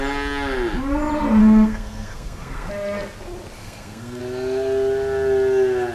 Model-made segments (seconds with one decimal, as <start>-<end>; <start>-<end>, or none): 1.4-2.7; 3.6-4.2